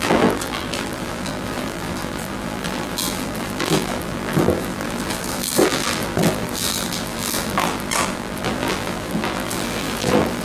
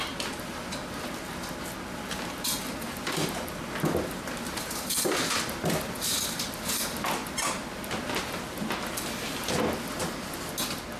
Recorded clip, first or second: second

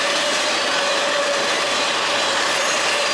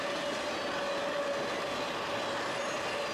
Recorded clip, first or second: second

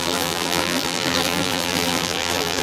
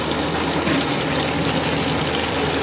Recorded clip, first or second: second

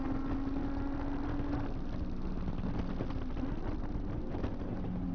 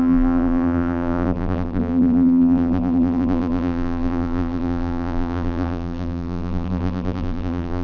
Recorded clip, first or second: first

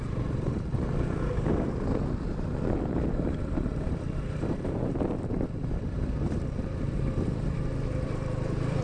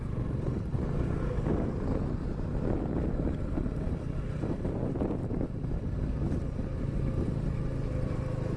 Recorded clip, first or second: second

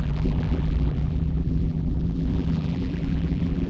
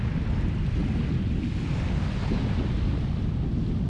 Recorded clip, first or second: second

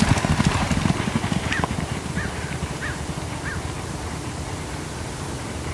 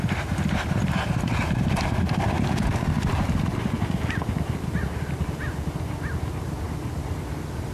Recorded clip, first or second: second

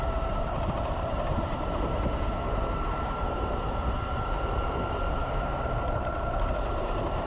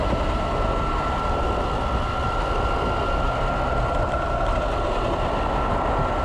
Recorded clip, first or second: second